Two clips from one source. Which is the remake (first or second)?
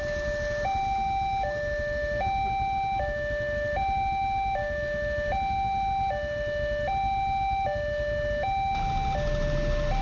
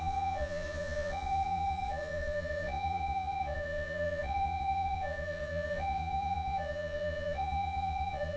second